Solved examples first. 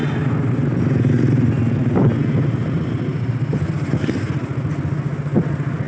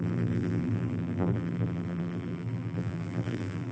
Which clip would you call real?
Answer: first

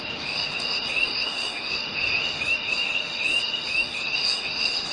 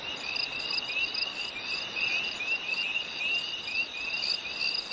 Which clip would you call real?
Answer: second